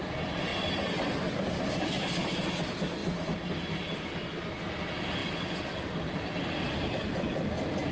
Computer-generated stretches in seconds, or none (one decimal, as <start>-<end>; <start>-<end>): none